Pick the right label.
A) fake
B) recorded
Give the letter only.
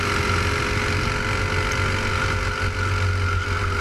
B